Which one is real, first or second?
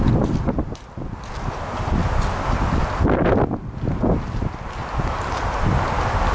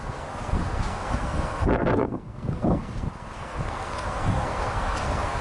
first